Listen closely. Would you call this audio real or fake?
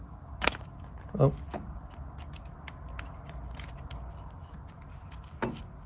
real